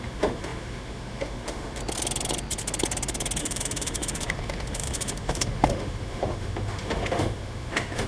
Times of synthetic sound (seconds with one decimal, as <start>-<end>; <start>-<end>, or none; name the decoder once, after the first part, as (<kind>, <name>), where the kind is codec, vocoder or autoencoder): 0.0-1.8 (autoencoder, DAC-VAE); 3.4-8.1